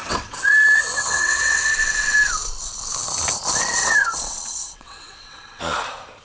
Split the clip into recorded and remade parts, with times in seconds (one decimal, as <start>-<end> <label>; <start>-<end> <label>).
0.0-1.6 remade; 1.6-3.8 recorded; 3.8-5.6 remade; 5.6-6.2 recorded